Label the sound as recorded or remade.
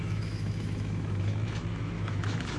remade